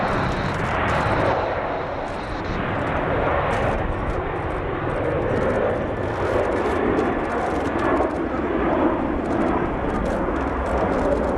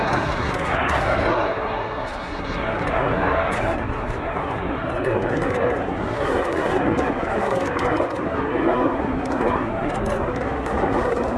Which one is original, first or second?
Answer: first